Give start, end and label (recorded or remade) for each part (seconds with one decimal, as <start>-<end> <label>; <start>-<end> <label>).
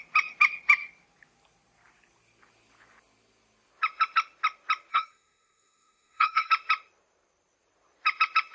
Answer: 0.0-4.9 recorded; 4.9-6.5 remade; 6.5-8.5 recorded